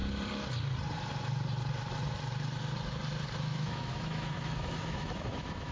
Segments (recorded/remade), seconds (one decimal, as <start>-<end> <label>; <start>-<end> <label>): 0.0-3.4 recorded; 3.4-5.7 remade